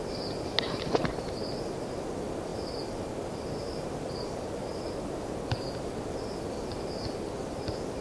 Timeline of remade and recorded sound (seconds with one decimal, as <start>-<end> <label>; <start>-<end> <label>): 0.0-8.0 recorded